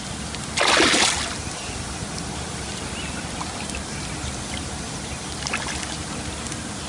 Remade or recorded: recorded